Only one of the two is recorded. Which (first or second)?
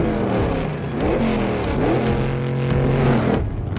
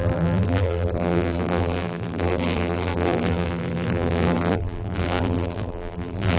first